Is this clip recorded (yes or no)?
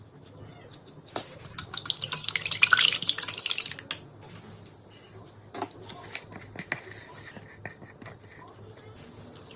yes